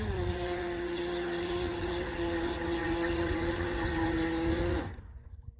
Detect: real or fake fake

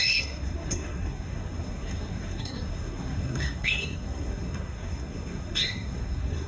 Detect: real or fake fake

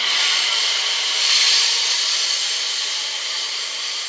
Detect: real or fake fake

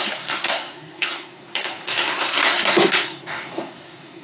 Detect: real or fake fake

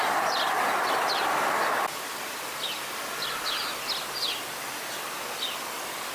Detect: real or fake real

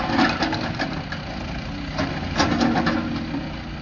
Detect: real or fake real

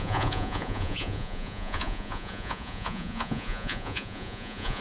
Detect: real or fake fake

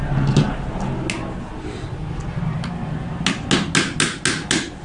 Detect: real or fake real